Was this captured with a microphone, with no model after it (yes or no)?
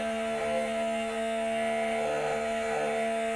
no